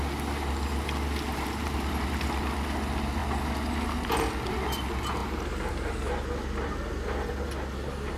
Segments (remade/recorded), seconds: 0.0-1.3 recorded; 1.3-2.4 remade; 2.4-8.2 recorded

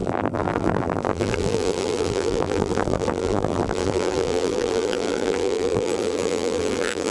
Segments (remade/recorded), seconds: 0.0-7.1 remade

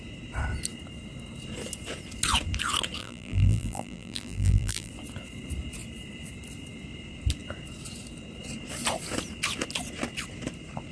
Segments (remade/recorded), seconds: 0.0-3.0 recorded; 3.0-4.9 remade; 4.9-10.9 recorded